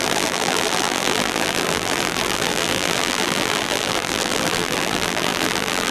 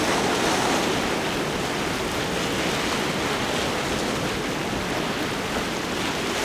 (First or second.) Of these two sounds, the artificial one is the first